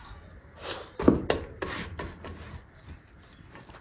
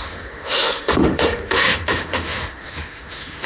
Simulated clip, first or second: second